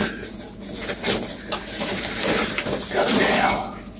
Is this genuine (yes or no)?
yes